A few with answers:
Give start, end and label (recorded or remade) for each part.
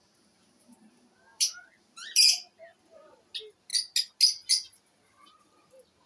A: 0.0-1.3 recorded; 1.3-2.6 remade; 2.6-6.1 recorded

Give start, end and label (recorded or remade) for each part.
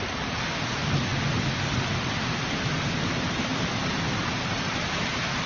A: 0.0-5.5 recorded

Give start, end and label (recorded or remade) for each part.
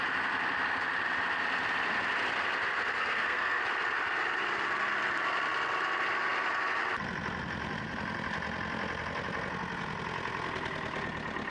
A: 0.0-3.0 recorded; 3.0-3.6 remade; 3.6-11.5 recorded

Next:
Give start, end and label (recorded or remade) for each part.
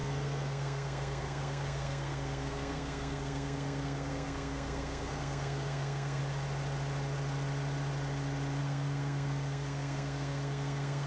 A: 0.0-6.2 remade; 6.2-8.6 recorded; 8.6-11.1 remade